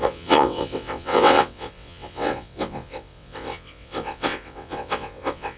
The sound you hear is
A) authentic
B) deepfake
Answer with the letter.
B